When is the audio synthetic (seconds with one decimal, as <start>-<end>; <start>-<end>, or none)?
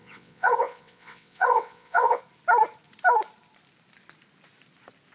0.0-2.2